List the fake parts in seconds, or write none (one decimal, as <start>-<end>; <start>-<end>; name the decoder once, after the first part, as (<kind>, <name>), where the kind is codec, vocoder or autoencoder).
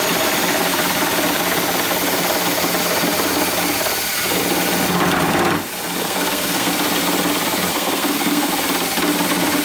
6.0-6.7 (codec, SNAC); 7.7-8.5